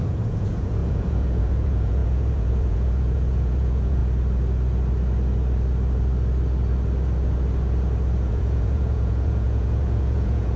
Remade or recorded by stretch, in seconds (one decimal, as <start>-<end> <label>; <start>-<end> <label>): 0.0-4.0 remade; 4.0-8.3 recorded; 8.3-10.6 remade